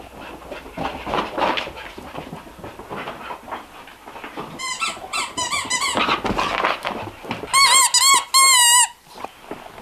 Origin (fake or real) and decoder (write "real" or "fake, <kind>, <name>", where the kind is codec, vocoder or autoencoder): real